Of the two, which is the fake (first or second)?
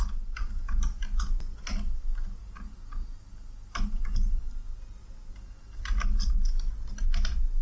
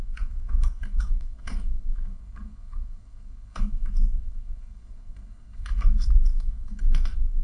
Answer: second